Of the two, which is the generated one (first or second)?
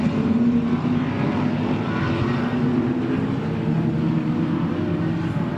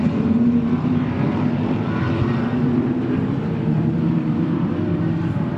second